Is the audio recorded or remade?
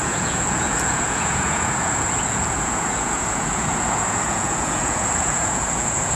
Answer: remade